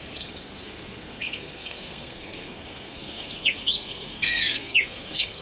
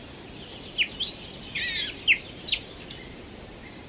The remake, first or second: first